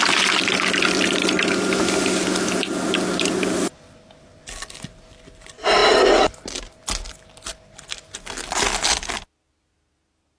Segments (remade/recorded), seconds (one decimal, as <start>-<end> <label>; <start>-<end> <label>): 0.0-10.4 recorded